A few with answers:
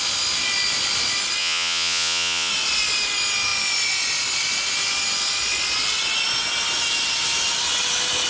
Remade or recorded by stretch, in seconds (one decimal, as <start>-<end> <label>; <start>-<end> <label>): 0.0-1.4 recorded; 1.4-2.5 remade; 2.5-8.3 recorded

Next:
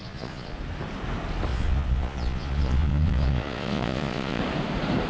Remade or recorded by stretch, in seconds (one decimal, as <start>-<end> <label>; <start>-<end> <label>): 0.0-0.6 remade; 0.6-1.5 recorded; 1.5-4.4 remade; 4.4-5.1 recorded

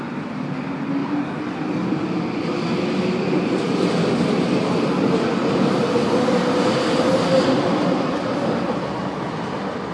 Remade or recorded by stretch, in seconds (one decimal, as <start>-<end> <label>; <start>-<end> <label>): 0.0-9.9 recorded